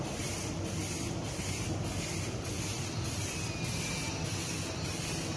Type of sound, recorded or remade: recorded